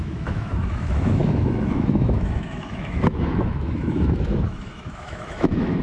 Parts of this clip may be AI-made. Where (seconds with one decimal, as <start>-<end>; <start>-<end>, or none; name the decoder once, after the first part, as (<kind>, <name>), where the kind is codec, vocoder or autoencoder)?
0.0-5.8 (autoencoder, DAC-VAE)